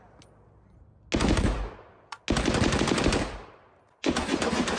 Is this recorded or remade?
recorded